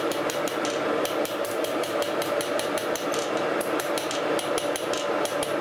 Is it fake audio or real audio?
real